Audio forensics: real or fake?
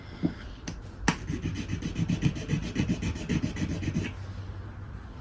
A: real